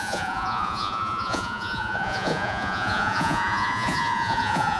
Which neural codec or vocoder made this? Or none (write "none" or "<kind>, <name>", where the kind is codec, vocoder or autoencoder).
vocoder, Vocos